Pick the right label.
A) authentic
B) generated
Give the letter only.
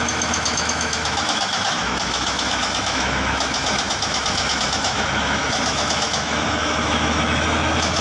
B